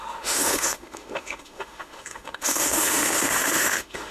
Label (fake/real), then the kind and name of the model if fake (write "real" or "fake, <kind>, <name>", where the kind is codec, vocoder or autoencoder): fake, autoencoder, DAC-VAE